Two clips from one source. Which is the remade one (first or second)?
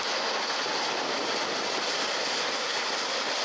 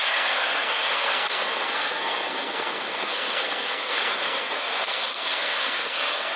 second